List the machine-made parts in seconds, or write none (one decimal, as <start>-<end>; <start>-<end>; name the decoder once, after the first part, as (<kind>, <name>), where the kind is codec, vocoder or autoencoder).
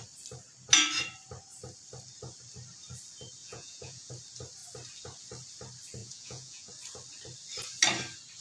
3.4-4.1 (vocoder, Vocos); 6.0-6.7